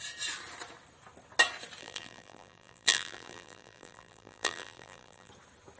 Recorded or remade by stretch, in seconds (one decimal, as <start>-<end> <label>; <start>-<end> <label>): 0.0-1.8 recorded; 1.8-5.3 remade; 5.3-5.8 recorded

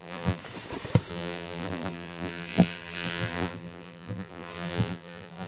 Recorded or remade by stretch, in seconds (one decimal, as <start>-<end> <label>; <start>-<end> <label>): 0.0-0.4 remade; 0.4-1.1 recorded; 1.1-5.5 remade

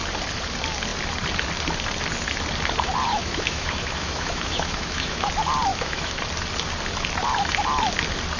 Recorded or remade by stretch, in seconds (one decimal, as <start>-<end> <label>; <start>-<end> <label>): 0.0-3.1 recorded; 3.1-5.3 remade; 5.3-5.7 recorded; 5.7-6.2 remade; 6.2-8.4 recorded

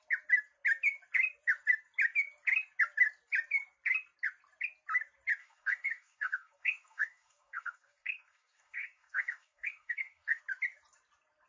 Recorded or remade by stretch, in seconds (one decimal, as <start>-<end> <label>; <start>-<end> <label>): 0.0-5.4 recorded; 5.4-10.4 remade; 10.4-11.5 recorded

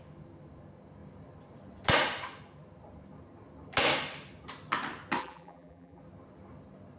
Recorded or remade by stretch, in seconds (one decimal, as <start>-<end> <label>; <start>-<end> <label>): 0.0-5.2 recorded; 5.2-6.0 remade; 6.0-7.0 recorded